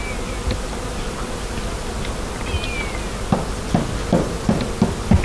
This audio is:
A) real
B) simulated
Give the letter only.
A